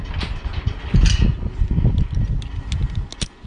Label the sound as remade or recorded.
recorded